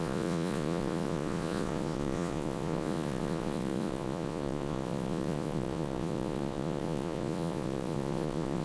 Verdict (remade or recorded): remade